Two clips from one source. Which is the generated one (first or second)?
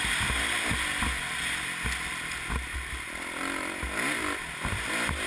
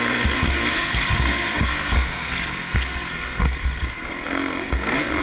second